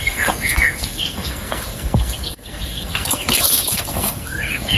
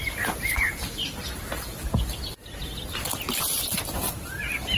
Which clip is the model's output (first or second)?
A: first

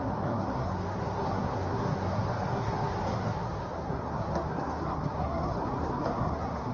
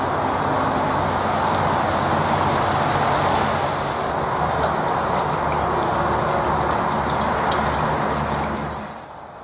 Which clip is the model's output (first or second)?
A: first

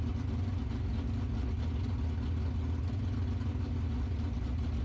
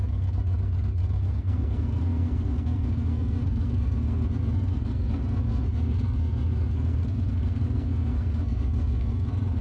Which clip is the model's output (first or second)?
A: second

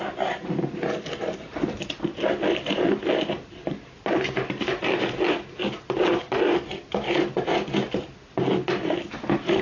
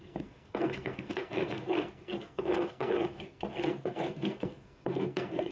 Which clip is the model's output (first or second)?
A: second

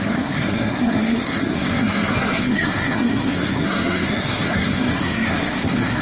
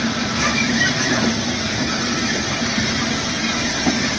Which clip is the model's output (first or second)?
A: first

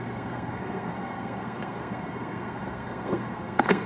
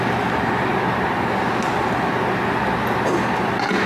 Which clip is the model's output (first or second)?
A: first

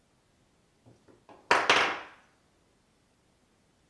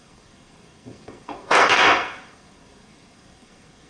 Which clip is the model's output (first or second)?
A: second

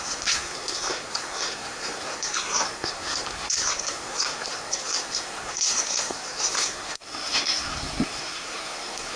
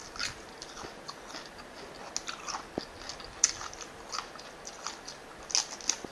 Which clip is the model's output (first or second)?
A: first